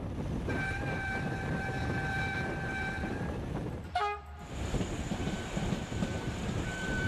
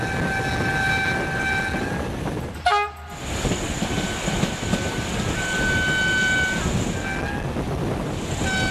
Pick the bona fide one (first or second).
second